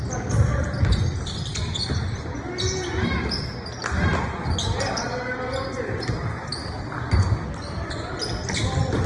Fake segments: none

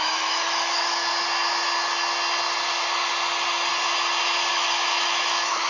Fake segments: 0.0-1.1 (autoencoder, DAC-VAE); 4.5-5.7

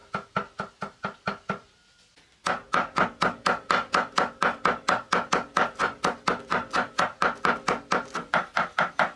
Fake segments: none

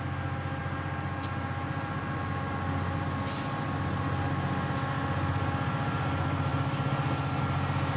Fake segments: none

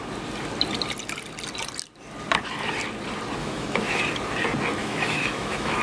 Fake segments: 3.4-4.0 (autoencoder, DAC-VAE); 4.8-5.8

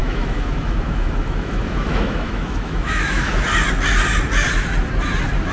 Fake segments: 0.0-3.3 (autoencoder, DAC-VAE)